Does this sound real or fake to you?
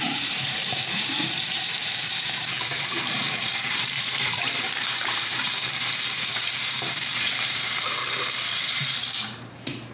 fake